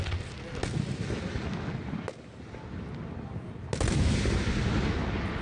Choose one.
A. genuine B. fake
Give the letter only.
A